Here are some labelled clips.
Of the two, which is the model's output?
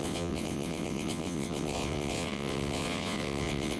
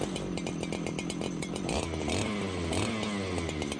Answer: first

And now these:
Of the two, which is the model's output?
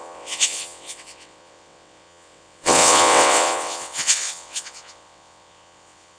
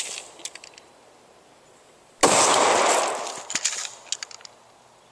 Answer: first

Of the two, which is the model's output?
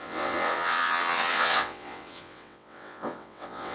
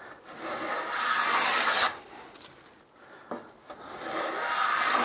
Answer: first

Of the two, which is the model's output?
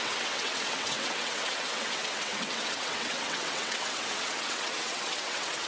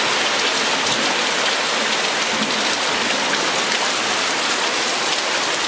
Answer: first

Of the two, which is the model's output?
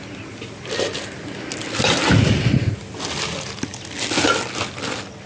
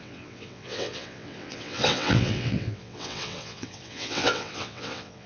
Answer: second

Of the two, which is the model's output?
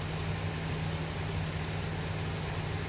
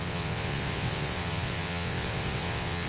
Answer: second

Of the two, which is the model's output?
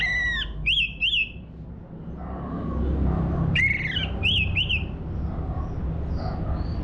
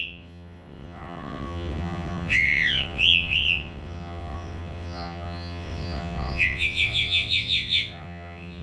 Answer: second